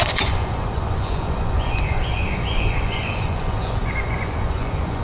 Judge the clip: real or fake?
fake